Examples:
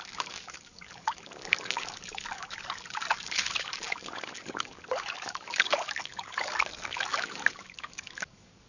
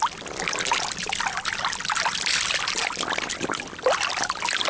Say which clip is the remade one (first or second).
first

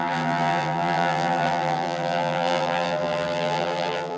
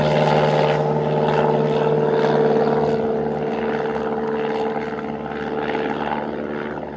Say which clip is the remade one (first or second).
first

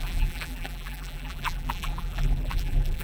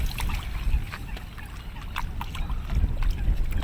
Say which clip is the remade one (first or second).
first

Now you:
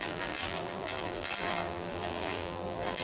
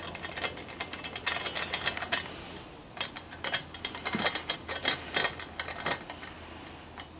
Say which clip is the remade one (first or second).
first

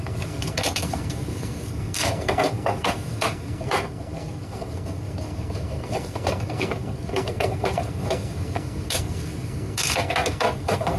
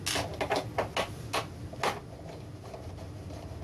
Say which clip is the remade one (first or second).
first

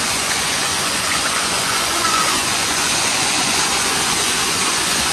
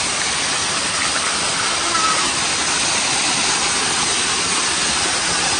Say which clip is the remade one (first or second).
first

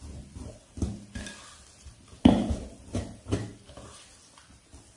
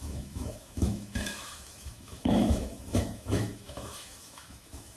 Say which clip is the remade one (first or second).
second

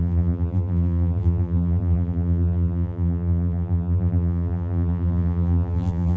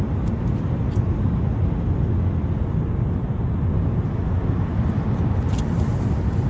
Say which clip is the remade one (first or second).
first